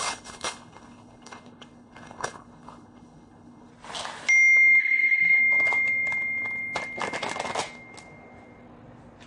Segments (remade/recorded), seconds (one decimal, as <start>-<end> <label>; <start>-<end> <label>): 0.0-3.7 remade; 3.7-4.8 recorded; 4.8-5.4 remade; 5.4-9.3 recorded